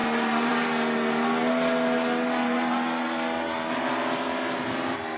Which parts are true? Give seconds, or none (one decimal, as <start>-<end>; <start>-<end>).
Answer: 0.0-5.2